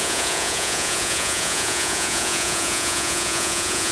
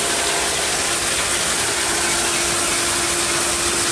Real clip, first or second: second